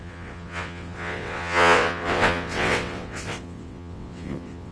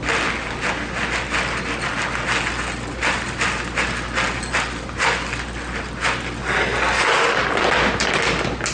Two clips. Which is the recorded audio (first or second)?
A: second